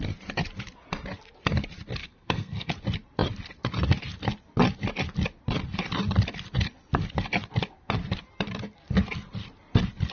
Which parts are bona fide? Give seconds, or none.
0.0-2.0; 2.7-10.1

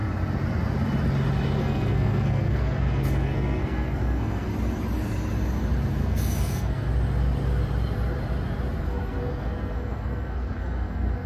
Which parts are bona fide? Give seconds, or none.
0.0-1.6; 4.5-6.0; 6.9-8.8

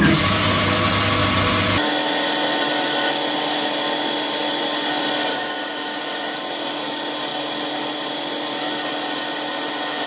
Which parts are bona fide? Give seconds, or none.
0.0-5.3; 6.0-10.1

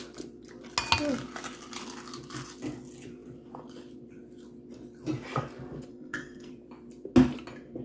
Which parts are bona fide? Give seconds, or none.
0.0-5.9; 6.5-7.8

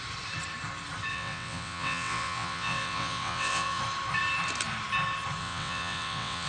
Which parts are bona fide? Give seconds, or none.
0.0-1.1; 3.8-5.4